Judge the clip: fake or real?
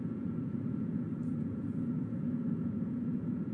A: fake